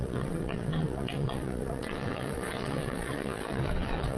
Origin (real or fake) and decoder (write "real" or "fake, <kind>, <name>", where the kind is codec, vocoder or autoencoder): fake, vocoder, WaveNeXt